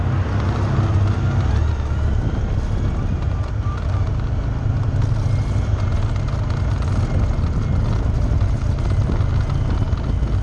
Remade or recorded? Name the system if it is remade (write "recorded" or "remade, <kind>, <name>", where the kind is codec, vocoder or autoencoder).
recorded